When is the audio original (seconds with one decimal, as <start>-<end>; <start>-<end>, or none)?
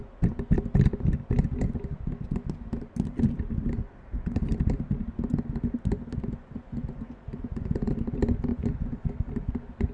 0.0-6.4; 7.9-8.5; 9.1-9.9